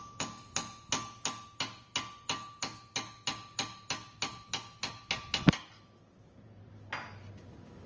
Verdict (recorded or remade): recorded